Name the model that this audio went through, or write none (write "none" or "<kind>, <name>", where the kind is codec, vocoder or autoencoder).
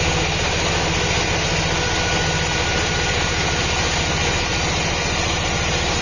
none